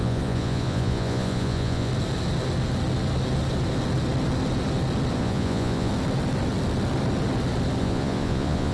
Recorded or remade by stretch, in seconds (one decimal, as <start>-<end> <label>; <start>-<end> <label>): 0.0-1.9 remade; 1.9-5.2 recorded; 5.2-5.9 remade; 5.9-7.8 recorded; 7.8-8.7 remade